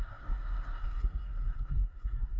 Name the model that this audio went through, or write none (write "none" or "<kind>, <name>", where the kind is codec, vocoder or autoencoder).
codec, SNAC